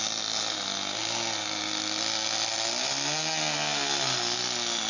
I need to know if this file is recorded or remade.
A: recorded